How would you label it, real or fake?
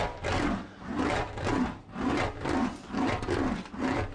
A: real